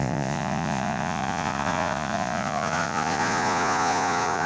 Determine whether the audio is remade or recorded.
remade